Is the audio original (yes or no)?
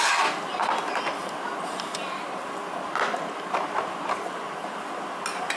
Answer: yes